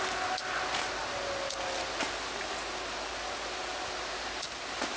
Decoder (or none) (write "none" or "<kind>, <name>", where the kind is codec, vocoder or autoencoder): none